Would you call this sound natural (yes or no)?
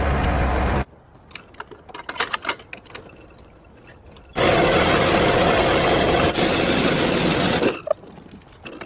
yes